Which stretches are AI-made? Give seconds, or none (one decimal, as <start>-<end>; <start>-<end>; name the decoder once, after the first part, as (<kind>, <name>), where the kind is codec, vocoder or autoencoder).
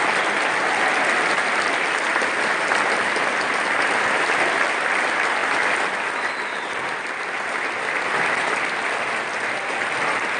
none